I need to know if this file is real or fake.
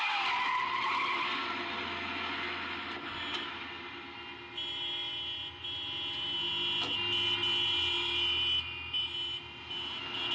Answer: real